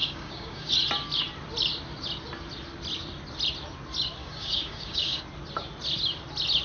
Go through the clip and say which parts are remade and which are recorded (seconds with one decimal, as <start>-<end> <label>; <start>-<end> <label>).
0.0-0.7 remade; 0.7-4.2 recorded; 4.2-5.2 remade; 5.2-6.6 recorded